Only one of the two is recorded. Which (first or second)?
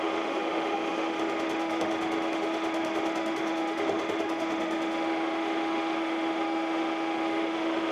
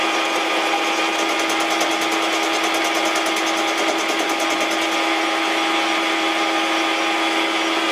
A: second